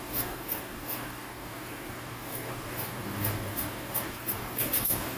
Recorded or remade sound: remade